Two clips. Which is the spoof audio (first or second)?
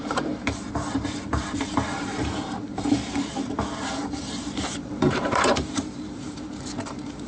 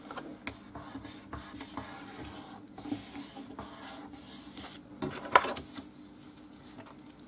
first